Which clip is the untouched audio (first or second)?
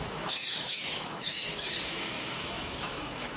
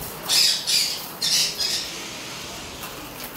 second